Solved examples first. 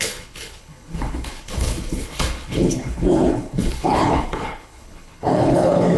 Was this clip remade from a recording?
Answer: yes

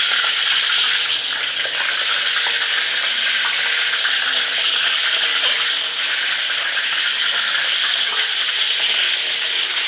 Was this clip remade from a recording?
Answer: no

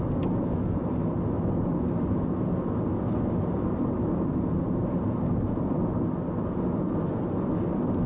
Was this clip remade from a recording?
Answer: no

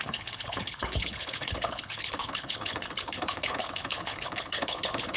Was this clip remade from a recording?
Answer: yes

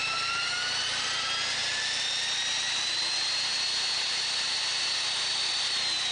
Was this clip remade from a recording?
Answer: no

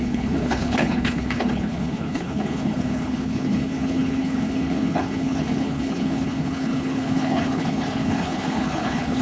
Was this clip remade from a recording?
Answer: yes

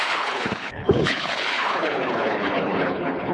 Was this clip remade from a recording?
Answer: yes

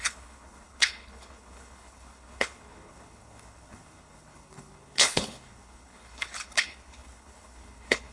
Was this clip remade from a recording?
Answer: yes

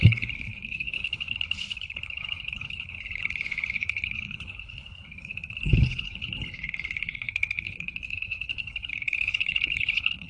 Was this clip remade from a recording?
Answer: yes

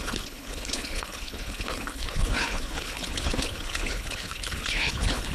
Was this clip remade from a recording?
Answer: yes